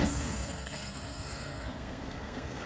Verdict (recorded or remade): remade